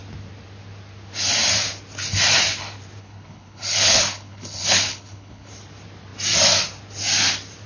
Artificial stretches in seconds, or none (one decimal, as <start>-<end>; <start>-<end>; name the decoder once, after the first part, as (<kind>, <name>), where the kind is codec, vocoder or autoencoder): 3.0-5.5 (codec, HILCodec)